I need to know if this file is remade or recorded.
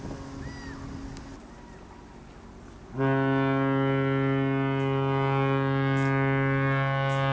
recorded